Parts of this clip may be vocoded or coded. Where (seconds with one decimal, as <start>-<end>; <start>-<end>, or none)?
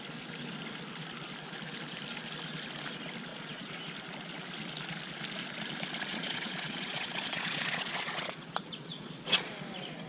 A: 3.3-3.8; 6.1-9.5